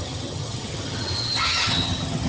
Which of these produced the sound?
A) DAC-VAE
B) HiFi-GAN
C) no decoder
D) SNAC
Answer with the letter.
B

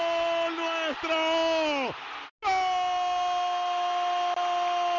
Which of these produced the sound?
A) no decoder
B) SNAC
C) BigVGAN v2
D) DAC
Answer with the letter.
A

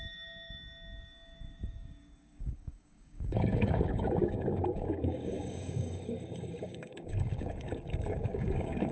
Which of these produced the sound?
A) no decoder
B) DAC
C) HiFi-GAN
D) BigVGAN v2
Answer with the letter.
B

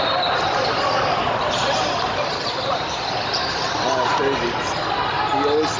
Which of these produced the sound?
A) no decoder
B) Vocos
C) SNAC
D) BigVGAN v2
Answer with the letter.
A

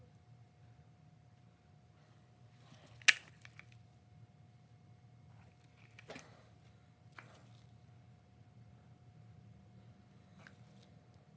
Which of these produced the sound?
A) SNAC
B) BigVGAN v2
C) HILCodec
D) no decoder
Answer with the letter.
D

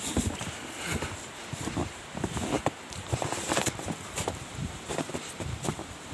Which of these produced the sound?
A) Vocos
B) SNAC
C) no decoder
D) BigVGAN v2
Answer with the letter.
D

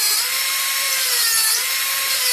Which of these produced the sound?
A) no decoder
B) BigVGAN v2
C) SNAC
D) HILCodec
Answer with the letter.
B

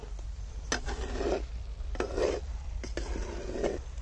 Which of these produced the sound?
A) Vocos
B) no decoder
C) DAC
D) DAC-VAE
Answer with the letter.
B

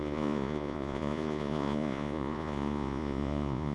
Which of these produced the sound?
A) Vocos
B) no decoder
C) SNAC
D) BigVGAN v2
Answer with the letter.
A